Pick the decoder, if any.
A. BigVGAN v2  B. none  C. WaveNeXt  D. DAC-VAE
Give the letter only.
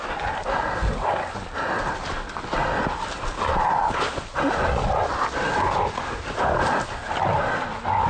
B